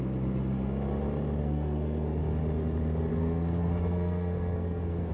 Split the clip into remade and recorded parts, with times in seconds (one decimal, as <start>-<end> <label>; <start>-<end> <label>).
0.0-1.4 recorded; 1.4-2.2 remade; 2.2-3.1 recorded; 3.1-5.1 remade